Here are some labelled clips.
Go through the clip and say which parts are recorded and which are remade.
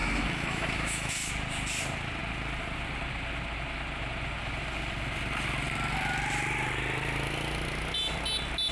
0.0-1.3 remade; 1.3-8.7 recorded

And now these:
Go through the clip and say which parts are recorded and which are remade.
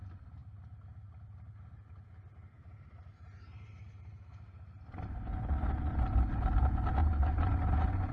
0.0-5.3 recorded; 5.3-5.9 remade; 5.9-7.0 recorded; 7.0-8.1 remade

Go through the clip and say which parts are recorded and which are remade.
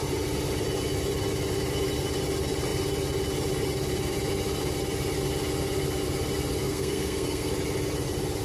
0.0-6.6 recorded; 6.6-7.5 remade; 7.5-8.4 recorded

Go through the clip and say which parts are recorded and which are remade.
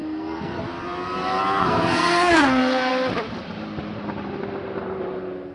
0.0-0.6 remade; 0.6-1.6 recorded; 1.6-2.9 remade; 2.9-5.5 recorded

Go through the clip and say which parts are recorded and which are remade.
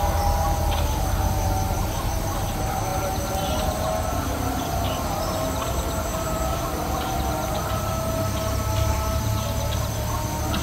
0.0-6.1 recorded; 6.1-7.1 remade; 7.1-10.6 recorded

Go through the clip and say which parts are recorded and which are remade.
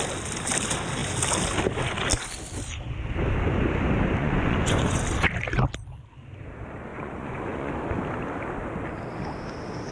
0.0-4.2 recorded; 4.2-5.0 remade; 5.0-6.9 recorded; 6.9-7.7 remade; 7.7-9.9 recorded